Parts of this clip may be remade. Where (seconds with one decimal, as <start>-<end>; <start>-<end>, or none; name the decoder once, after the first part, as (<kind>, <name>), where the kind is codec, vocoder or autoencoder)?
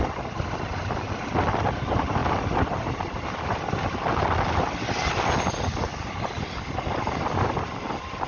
2.2-4.1 (vocoder, BigVGAN v2); 5.9-7.8